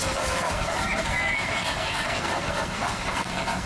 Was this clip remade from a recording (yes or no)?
yes